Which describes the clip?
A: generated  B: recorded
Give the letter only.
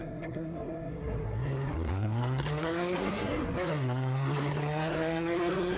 A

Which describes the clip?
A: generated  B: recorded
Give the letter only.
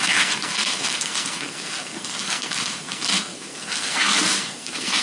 A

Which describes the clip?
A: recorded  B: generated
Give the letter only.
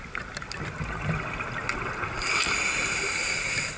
A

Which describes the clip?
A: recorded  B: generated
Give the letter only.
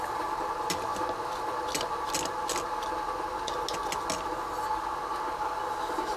A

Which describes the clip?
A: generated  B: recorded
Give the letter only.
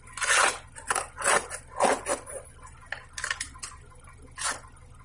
B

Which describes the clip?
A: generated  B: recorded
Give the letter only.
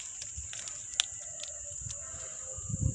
B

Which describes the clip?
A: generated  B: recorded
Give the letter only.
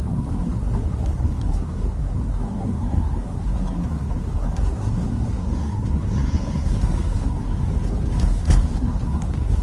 A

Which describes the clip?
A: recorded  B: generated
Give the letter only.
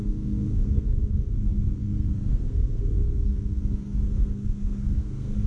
B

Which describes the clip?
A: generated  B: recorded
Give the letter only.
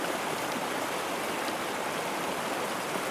B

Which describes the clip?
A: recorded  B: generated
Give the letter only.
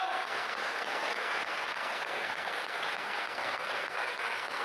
B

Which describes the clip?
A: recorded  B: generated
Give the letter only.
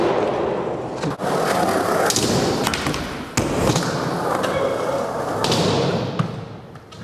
A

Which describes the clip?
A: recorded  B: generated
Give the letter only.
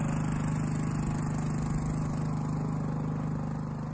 A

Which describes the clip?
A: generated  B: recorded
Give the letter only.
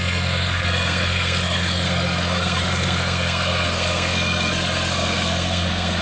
A